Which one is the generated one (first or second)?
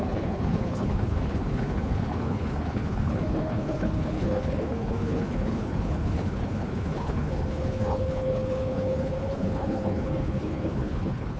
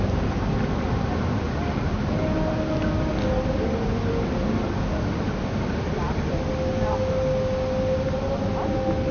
first